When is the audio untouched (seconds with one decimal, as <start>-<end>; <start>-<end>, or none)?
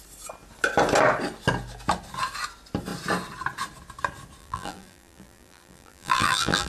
0.0-4.4